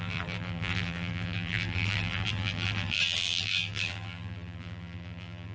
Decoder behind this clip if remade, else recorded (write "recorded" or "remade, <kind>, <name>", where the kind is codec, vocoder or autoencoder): remade, vocoder, BigVGAN v2